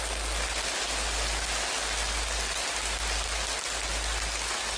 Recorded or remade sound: recorded